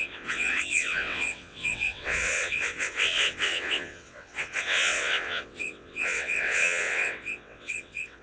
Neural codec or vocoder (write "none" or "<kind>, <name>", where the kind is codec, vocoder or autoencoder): vocoder, WaveNeXt